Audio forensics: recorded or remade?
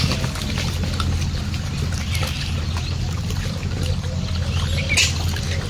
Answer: recorded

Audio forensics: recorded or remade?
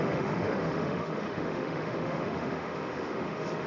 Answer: remade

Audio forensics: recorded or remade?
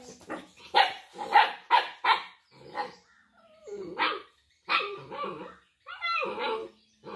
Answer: recorded